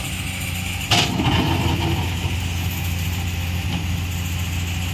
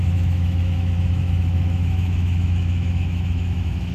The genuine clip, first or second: first